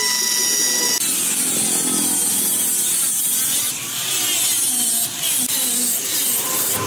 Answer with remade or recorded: recorded